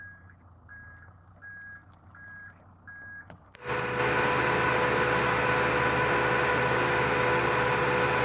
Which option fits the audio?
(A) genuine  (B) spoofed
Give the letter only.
A